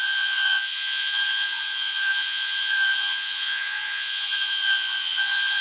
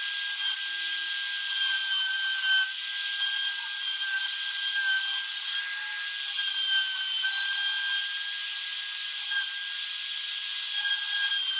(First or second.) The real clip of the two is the second